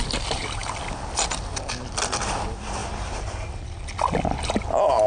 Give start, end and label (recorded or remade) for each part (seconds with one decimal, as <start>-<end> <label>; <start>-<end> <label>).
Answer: 0.0-5.1 recorded